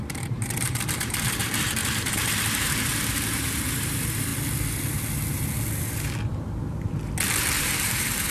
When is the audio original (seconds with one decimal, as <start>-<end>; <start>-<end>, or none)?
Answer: 4.3-7.6